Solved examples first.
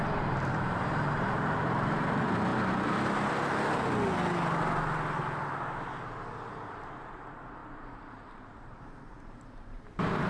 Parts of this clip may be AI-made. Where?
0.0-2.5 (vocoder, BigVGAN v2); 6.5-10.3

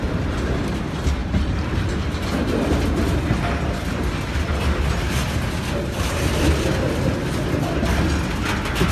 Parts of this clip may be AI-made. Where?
none